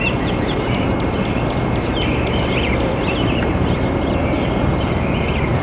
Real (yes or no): no